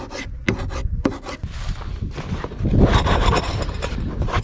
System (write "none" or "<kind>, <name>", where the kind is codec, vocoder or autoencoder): none